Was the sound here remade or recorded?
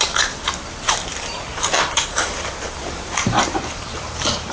remade